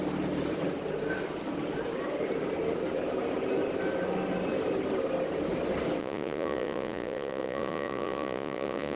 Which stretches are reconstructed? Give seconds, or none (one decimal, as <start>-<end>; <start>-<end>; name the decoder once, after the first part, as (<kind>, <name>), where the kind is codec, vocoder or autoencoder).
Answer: 6.0-9.0 (vocoder, Vocos)